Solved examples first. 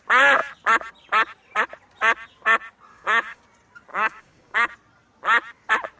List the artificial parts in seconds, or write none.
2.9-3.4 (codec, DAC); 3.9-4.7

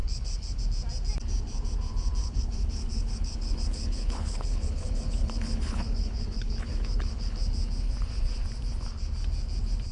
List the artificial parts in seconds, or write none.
0.0-0.6 (codec, HILCodec); 2.2-7.4

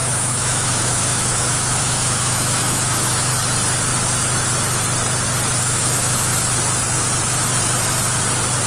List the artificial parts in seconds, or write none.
0.0-3.3 (autoencoder, DAC-VAE); 5.6-6.3

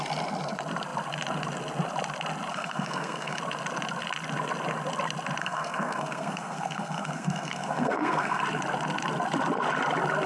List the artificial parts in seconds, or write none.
2.5-3.4 (codec, SNAC); 5.4-8.4